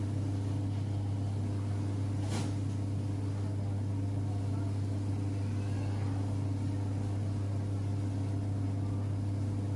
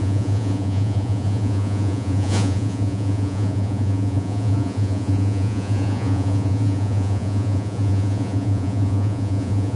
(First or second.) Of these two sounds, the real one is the first